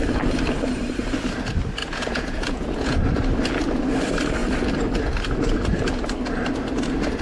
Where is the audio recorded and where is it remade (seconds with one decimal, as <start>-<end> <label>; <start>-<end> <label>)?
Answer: 0.0-1.8 recorded; 1.8-3.0 remade; 3.0-7.2 recorded